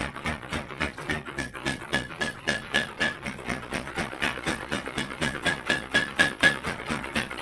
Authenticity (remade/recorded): remade